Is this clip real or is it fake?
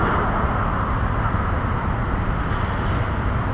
real